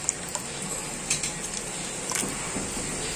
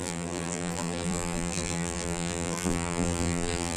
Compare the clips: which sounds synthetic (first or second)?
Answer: second